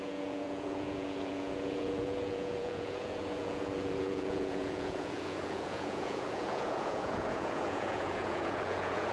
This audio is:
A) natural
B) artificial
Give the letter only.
B